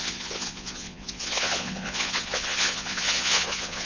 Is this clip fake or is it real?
fake